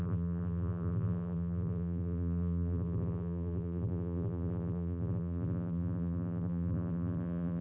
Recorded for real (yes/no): no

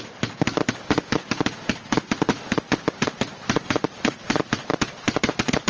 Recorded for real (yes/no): no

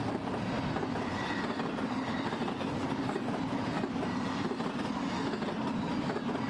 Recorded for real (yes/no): yes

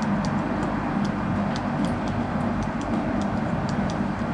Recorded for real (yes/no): yes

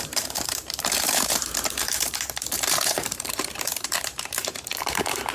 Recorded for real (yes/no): no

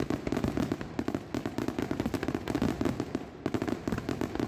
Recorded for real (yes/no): yes